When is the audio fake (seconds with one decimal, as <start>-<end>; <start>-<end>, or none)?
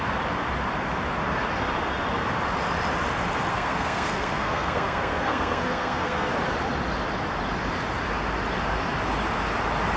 3.5-6.3